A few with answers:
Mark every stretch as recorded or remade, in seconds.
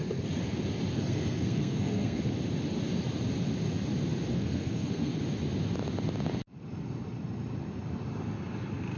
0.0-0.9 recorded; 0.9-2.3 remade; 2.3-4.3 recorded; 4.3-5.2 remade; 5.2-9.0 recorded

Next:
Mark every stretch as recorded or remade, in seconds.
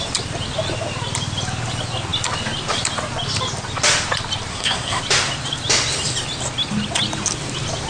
0.0-4.5 recorded; 4.5-5.0 remade; 5.0-7.9 recorded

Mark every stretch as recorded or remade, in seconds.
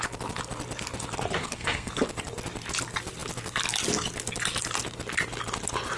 0.0-1.4 recorded; 1.4-1.9 remade; 1.9-6.0 recorded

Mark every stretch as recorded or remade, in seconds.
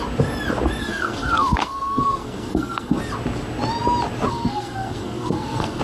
0.0-0.8 recorded; 0.8-3.0 remade; 3.0-4.3 recorded; 4.3-5.8 remade